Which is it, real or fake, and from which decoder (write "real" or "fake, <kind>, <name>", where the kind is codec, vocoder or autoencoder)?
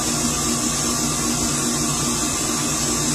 real